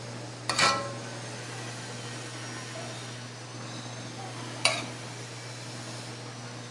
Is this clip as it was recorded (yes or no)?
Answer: yes